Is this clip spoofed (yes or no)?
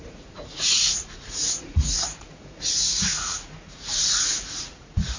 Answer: yes